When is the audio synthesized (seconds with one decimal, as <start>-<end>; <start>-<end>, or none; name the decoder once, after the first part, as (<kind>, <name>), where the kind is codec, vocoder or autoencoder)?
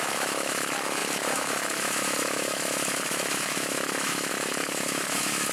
0.0-5.5 (autoencoder, DAC-VAE)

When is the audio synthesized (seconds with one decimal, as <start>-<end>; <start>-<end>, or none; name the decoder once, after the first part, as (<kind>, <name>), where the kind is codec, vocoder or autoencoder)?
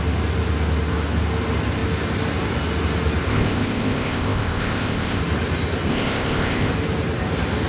3.3-5.2 (codec, ZipCodec); 5.9-6.7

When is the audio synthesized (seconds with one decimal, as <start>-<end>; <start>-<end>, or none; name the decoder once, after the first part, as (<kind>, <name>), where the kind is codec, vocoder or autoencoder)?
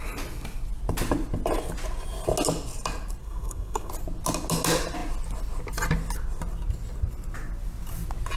3.2-3.9 (codec, SNAC)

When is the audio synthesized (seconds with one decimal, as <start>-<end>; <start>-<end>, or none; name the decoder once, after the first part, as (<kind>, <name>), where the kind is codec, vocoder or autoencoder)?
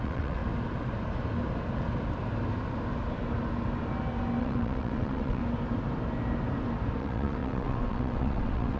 0.0-0.4 (vocoder, WaveNeXt); 4.4-5.4; 7.0-8.8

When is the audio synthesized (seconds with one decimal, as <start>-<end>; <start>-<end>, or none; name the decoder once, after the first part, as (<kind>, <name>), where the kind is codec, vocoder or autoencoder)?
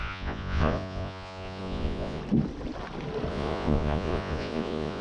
0.0-2.2 (vocoder, Vocos); 3.3-5.0